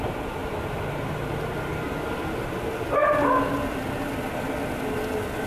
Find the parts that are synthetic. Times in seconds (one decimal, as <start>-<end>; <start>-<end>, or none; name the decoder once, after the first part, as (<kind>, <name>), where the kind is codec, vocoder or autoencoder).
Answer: 0.4-1.4 (vocoder, BigVGAN v2)